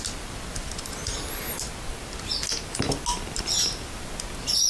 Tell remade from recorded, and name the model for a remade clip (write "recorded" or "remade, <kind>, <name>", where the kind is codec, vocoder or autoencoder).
recorded